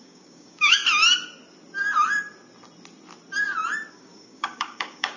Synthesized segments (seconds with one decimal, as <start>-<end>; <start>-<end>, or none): 0.0-0.8; 3.9-5.2